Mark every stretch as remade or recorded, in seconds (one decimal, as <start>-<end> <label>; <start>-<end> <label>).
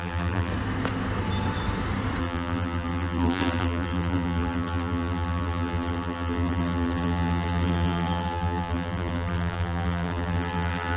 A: 0.0-0.5 remade; 0.5-2.2 recorded; 2.2-11.0 remade